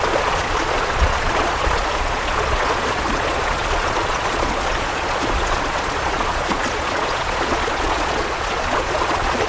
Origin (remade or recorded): remade